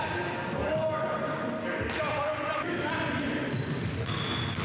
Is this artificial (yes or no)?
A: no